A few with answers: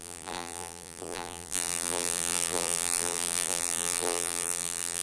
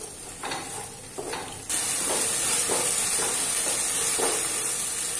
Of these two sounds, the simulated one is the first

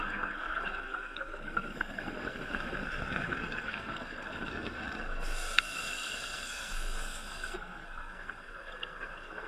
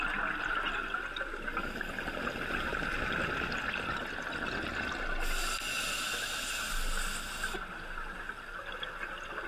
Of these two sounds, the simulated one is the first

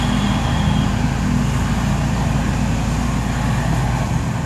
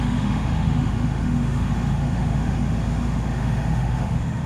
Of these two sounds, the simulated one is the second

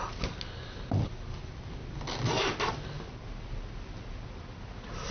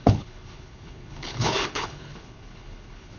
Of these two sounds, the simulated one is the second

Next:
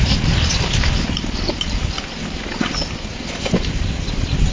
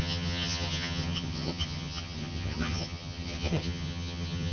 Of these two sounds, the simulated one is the second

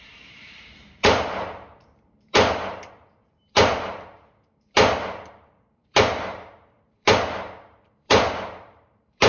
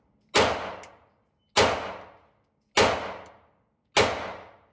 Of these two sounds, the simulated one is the first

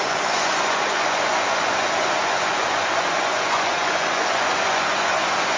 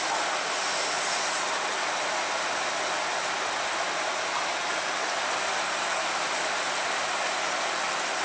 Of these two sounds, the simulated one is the first